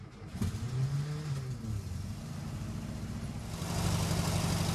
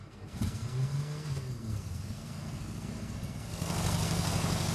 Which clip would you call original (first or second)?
first